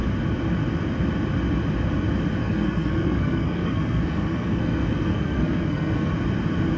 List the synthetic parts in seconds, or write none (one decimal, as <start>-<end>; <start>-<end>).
2.4-6.1

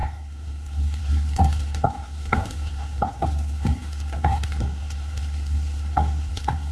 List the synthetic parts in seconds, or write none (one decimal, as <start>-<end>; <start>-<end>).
0.0-6.7

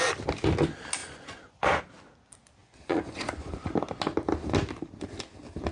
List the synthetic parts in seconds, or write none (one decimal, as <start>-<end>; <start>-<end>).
1.0-1.8; 2.6-3.7

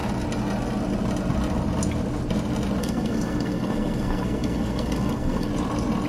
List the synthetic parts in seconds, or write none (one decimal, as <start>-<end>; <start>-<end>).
2.8-5.5

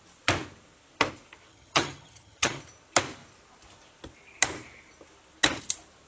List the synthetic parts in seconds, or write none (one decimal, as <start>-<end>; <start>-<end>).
1.5-2.6

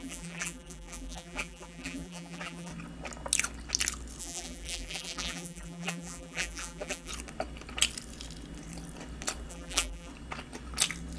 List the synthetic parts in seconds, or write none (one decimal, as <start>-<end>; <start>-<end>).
0.0-2.7; 4.2-7.1; 9.5-10.1

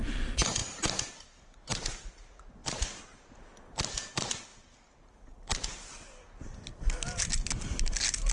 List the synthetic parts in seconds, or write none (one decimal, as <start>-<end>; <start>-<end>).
0.6-1.4; 2.6-3.2